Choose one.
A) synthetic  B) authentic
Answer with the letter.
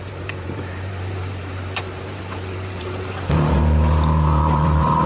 A